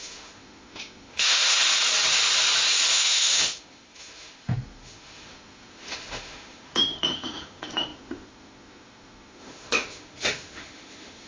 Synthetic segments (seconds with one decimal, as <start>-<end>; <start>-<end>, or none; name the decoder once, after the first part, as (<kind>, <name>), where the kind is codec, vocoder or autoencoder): 0.0-1.6 (autoencoder, DAC-VAE); 2.9-11.3